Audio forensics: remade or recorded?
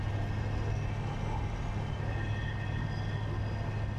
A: recorded